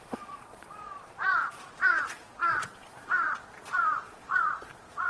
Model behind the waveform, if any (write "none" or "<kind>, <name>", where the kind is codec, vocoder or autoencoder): vocoder, Vocos